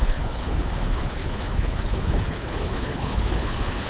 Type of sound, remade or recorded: remade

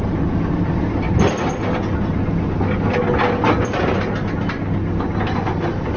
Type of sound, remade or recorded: recorded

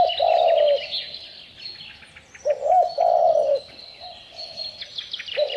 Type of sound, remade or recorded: recorded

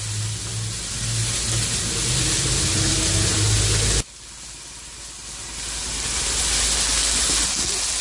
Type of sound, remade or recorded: recorded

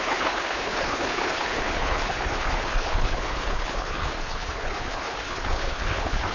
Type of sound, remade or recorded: remade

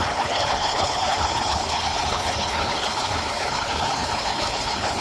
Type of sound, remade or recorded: remade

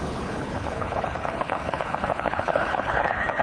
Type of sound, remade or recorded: remade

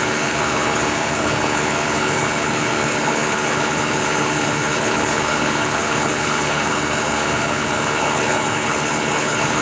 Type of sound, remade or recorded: remade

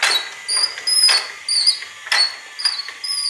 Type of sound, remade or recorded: recorded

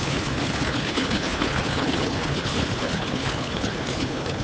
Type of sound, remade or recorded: remade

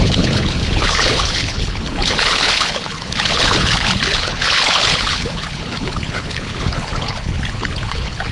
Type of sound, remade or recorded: remade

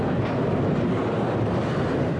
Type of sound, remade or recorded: recorded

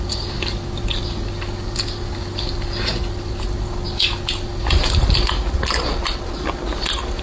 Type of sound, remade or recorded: recorded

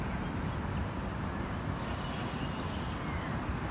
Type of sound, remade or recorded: recorded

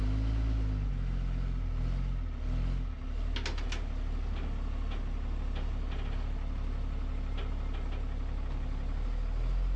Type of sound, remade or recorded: recorded